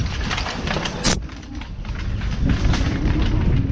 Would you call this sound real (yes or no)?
yes